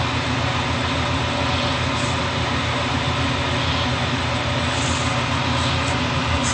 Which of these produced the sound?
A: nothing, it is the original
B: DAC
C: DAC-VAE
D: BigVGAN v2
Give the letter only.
A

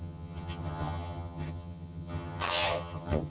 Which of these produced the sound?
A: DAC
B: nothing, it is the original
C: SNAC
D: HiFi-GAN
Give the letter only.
D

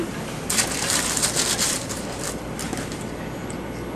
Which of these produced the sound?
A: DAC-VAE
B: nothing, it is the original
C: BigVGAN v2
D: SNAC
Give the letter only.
B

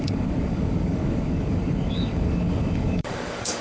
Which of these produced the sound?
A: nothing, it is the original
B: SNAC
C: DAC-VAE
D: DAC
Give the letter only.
D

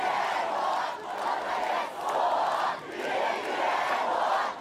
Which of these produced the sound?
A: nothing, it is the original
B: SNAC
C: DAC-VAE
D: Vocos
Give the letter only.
A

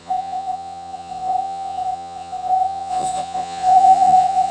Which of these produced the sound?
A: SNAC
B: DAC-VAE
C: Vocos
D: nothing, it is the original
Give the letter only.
C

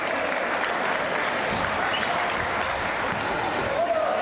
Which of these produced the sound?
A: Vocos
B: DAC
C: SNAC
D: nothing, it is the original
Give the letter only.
D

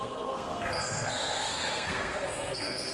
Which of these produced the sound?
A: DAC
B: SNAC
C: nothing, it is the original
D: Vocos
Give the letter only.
B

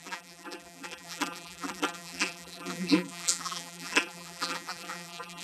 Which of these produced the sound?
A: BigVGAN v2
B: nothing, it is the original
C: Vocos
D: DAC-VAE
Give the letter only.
A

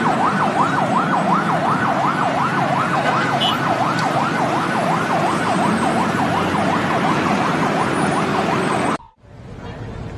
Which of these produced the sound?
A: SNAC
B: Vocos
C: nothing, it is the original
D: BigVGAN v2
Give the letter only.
C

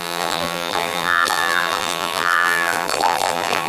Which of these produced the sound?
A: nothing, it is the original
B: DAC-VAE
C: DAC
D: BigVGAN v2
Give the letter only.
D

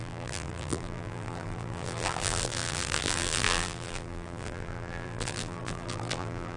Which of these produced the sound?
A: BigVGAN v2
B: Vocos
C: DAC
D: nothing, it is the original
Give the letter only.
A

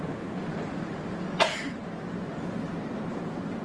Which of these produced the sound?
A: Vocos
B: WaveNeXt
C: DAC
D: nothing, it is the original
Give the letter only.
D